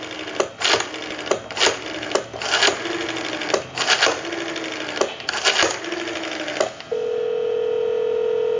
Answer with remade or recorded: recorded